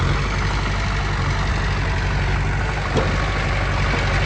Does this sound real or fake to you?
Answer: real